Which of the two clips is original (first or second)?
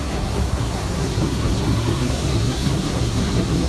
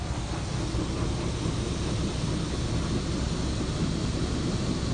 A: second